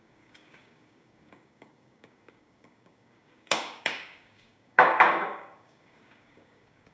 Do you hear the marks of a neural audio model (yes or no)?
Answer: yes